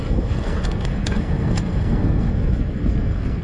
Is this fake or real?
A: fake